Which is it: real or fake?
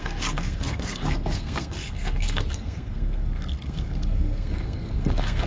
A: fake